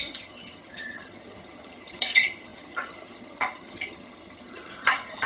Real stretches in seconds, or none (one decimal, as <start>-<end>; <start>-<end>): none